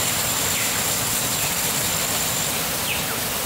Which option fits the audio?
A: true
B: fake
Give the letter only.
B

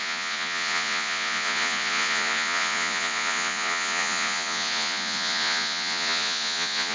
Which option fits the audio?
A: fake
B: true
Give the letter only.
A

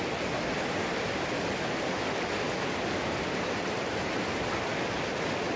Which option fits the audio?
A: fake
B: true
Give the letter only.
B